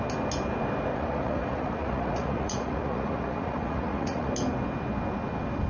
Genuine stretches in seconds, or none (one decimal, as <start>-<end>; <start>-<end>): 0.0-0.9; 4.3-5.7